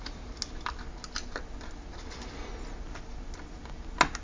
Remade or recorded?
recorded